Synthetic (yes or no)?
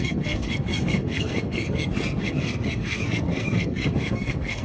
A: yes